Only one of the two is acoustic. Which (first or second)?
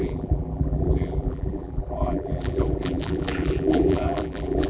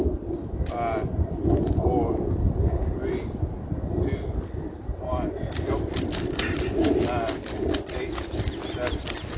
second